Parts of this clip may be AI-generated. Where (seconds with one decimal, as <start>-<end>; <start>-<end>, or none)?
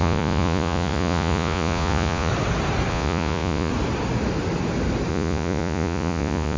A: 0.0-2.3; 2.9-3.7; 5.1-6.6